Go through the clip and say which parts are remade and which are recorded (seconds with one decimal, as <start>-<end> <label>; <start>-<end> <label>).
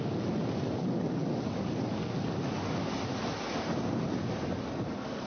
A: 0.0-5.3 recorded